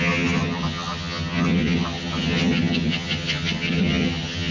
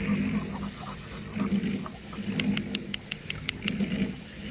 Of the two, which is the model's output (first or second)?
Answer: first